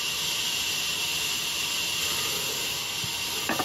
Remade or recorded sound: recorded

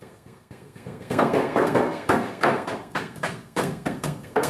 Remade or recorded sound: remade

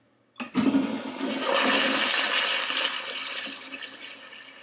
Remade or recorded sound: recorded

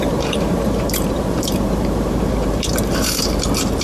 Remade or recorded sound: remade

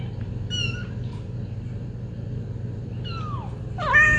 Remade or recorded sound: recorded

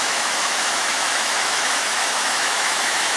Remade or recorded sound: remade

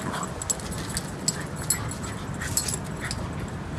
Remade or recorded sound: recorded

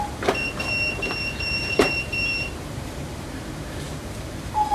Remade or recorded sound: remade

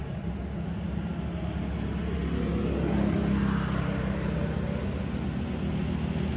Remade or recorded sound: recorded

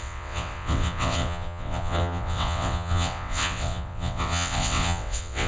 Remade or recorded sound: remade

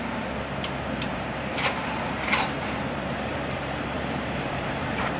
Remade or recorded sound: remade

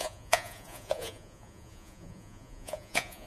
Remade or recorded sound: remade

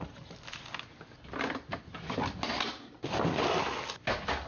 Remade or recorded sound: recorded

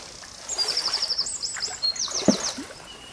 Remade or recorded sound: recorded